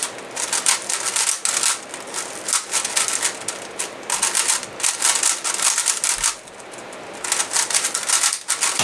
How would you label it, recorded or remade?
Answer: recorded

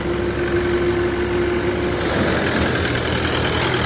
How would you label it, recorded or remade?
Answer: recorded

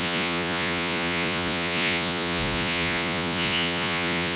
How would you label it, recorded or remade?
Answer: remade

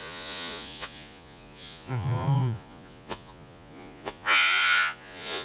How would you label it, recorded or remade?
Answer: remade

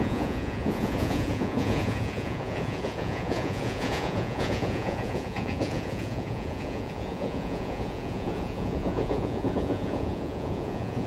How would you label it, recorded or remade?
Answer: remade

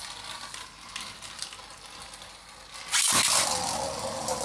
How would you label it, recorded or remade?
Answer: recorded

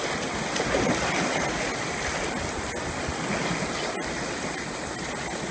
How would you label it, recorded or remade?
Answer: recorded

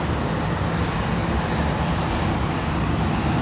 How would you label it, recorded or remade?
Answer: recorded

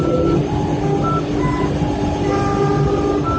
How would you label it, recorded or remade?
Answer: recorded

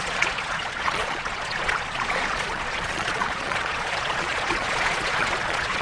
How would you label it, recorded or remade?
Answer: remade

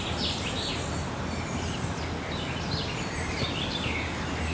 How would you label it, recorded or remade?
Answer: recorded